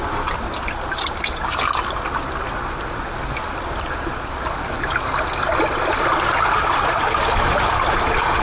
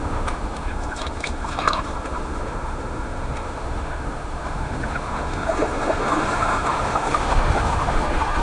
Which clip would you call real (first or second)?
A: first